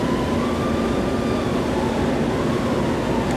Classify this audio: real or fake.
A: real